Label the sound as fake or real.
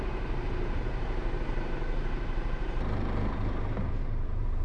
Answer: fake